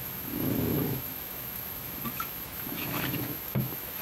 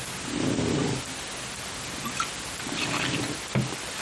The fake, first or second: first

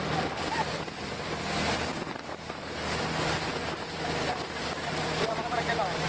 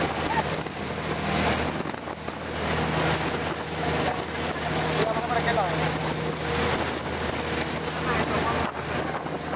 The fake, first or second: first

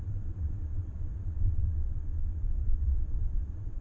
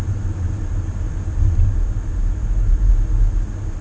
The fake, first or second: first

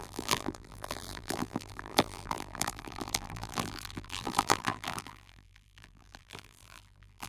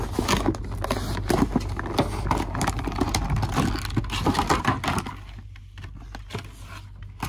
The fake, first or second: first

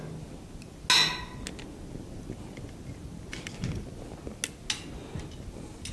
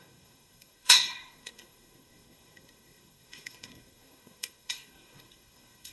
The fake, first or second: second